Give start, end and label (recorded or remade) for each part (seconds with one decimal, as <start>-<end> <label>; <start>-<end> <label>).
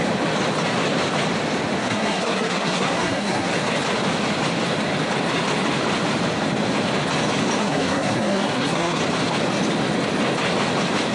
0.0-1.8 recorded; 1.8-3.5 remade; 3.5-7.6 recorded; 7.6-9.0 remade; 9.0-11.1 recorded